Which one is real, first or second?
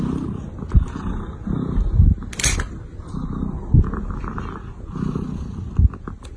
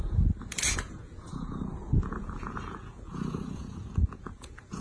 first